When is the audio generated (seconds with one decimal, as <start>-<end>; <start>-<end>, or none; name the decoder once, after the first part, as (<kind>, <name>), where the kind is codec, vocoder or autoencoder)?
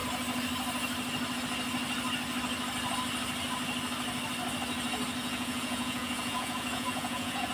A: 5.2-7.5 (vocoder, Vocos)